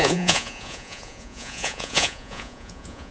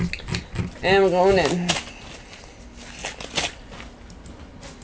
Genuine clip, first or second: second